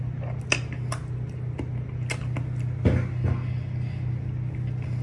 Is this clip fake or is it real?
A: real